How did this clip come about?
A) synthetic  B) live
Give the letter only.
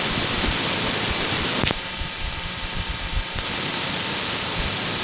A